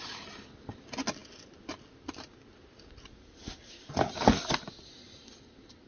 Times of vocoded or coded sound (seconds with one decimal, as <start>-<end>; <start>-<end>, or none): none